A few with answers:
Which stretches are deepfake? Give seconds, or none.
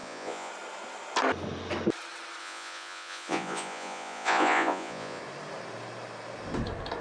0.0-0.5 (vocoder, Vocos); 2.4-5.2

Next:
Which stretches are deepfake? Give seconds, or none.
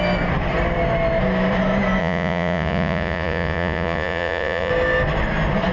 2.0-4.7 (vocoder, Vocos)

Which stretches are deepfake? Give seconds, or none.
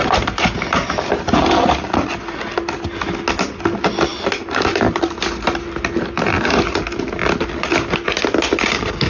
none